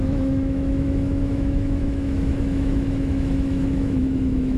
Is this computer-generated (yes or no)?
yes